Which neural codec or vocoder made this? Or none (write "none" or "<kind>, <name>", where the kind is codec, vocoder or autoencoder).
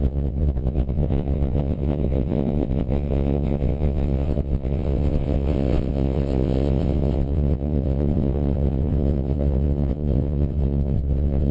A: vocoder, WaveNeXt